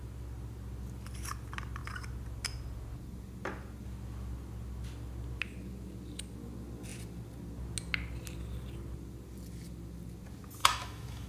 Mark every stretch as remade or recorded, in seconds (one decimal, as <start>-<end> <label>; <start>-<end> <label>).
0.0-10.6 recorded; 10.6-11.3 remade